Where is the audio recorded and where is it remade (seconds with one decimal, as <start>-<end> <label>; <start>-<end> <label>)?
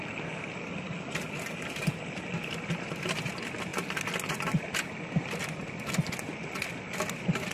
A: 0.0-7.5 recorded